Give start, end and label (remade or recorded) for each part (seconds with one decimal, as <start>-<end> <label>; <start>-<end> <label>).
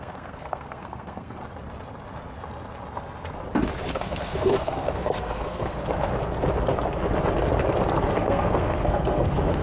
0.0-1.4 remade; 1.4-3.9 recorded; 3.9-6.1 remade; 6.1-8.1 recorded; 8.1-9.6 remade